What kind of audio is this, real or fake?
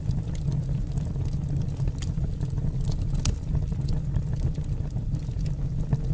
real